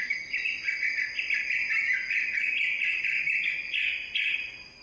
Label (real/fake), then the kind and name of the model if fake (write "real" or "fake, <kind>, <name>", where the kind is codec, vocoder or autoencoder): real